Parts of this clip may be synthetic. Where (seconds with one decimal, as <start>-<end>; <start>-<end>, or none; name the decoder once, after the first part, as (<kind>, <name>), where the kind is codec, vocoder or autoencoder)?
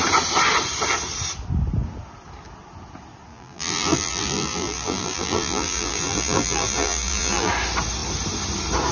3.3-7.5 (vocoder, BigVGAN v2)